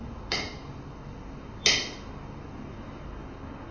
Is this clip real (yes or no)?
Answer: yes